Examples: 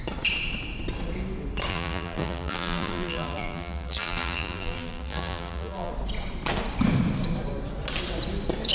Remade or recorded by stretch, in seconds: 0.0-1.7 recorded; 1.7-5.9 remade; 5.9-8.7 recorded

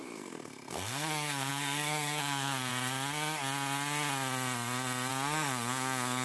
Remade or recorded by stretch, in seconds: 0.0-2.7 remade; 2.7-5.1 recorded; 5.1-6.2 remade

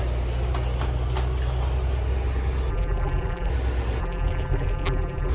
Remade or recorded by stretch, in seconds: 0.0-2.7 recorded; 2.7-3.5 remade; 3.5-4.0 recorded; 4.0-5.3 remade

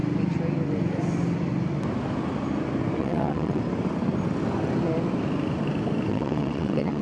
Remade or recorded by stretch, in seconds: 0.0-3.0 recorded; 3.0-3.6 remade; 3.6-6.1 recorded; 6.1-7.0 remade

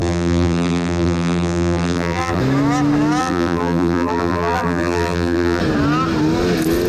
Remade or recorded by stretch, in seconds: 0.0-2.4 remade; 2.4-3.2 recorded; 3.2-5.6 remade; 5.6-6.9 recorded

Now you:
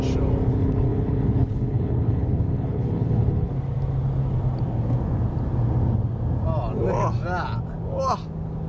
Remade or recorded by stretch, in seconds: 0.0-0.5 recorded; 0.5-3.5 remade; 3.5-8.7 recorded